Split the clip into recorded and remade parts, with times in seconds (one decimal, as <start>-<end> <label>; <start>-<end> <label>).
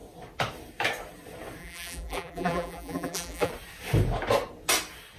0.0-1.6 recorded; 1.6-3.5 remade; 3.5-5.2 recorded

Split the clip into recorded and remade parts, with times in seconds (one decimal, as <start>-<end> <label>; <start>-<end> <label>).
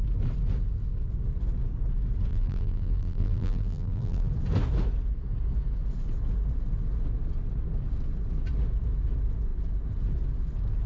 0.0-2.3 recorded; 2.3-4.3 remade; 4.3-10.9 recorded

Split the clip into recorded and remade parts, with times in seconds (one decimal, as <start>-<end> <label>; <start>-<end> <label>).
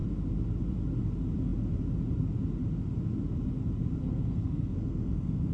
0.0-4.0 recorded; 4.0-5.5 remade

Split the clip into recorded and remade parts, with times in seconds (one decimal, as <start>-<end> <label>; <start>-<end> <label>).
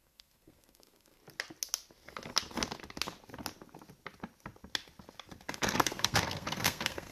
0.0-1.2 remade; 1.2-5.5 recorded; 5.5-7.1 remade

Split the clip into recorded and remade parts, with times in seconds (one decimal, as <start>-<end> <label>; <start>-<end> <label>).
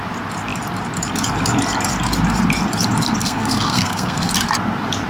0.0-3.2 recorded; 3.2-4.3 remade; 4.3-5.1 recorded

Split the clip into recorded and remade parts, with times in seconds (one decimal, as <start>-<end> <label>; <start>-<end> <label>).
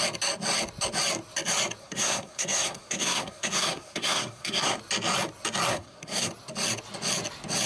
0.0-1.8 recorded; 1.8-4.8 remade; 4.8-5.7 recorded; 5.7-6.3 remade; 6.3-7.7 recorded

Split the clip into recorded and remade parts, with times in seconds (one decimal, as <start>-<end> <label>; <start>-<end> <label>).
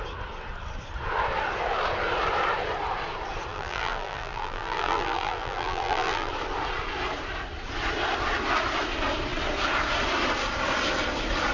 0.0-3.5 recorded; 3.5-6.3 remade; 6.3-11.5 recorded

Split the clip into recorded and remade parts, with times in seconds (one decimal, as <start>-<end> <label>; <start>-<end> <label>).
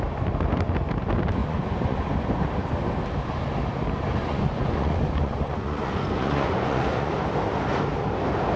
0.0-1.4 recorded; 1.4-2.1 remade; 2.1-4.2 recorded; 4.2-7.1 remade; 7.1-8.6 recorded